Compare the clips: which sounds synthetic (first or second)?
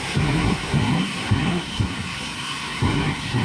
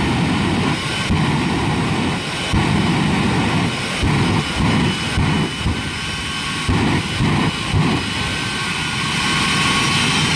first